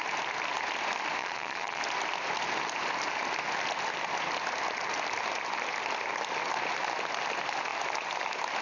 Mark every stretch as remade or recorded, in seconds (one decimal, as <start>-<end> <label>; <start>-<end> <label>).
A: 0.0-1.2 recorded; 1.2-1.8 remade; 1.8-8.6 recorded